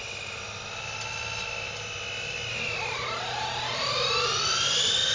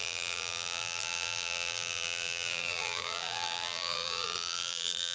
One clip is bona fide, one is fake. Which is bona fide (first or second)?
first